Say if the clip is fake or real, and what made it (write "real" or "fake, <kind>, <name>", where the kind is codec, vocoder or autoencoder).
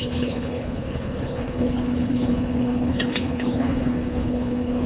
fake, codec, HILCodec